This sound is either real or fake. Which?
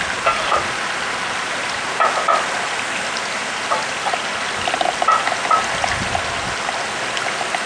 real